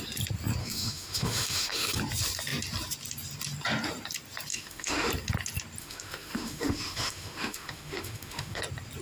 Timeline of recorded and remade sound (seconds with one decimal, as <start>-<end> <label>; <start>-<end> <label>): 0.0-0.6 recorded; 0.6-1.9 remade; 1.9-4.5 recorded; 4.5-5.1 remade; 5.1-5.8 recorded; 5.8-8.6 remade; 8.6-9.0 recorded